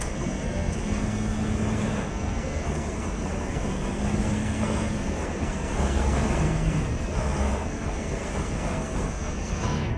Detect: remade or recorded remade